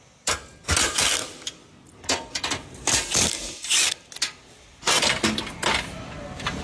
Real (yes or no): yes